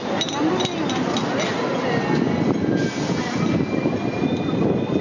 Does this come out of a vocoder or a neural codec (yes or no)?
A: no